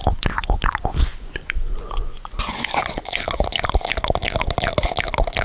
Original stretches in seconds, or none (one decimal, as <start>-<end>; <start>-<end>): 0.6-1.1; 3.7-5.4